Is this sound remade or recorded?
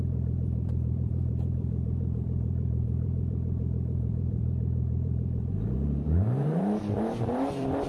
remade